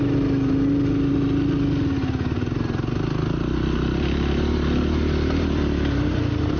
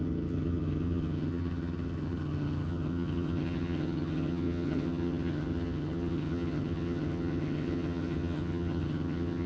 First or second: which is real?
first